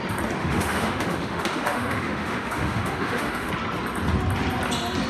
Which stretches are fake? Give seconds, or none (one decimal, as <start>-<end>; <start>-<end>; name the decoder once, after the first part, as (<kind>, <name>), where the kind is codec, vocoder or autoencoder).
0.4-3.5 (autoencoder, DAC-VAE)